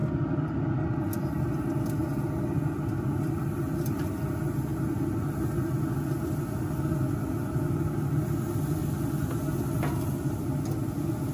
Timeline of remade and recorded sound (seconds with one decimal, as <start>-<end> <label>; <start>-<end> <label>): 0.0-11.3 recorded